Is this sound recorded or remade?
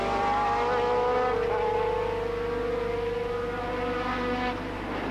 recorded